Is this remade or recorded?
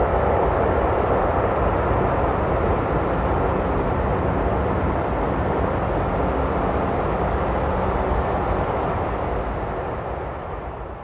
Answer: recorded